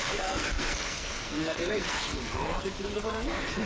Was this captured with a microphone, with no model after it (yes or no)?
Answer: no